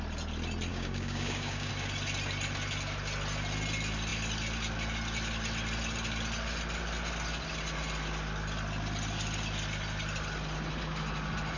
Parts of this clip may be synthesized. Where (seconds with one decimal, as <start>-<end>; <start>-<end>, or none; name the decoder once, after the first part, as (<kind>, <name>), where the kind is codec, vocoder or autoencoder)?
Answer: 0.7-1.7 (codec, DAC)

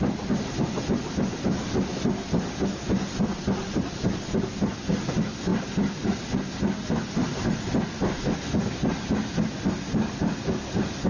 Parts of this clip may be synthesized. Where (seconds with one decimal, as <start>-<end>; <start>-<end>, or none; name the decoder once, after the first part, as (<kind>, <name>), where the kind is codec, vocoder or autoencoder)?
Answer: none